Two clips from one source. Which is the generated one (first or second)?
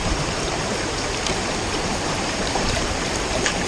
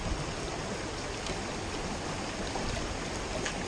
first